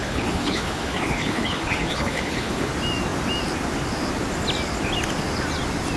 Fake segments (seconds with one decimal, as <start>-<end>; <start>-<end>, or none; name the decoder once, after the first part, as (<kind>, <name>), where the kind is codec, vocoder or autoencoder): 0.0-2.7 (codec, HILCodec)